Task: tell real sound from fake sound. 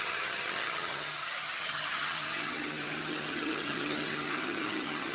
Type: fake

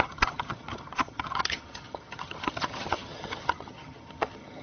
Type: fake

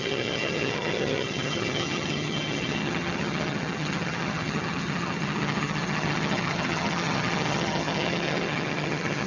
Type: fake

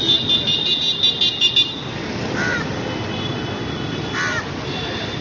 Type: real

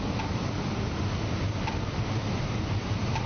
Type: real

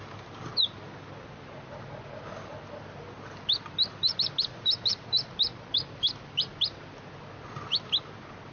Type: real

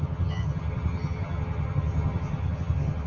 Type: fake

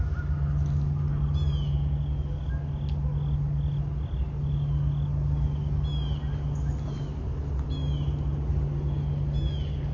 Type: real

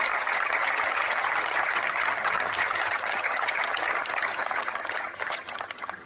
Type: fake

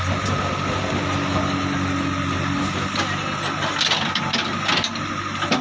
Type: real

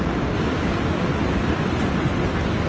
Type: real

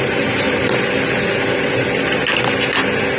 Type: real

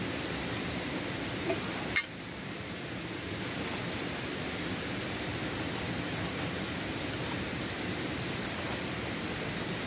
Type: real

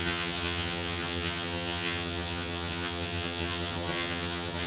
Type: fake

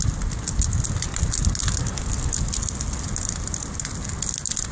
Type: real